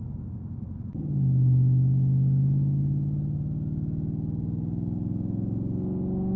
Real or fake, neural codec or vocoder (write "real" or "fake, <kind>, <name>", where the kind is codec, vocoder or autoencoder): real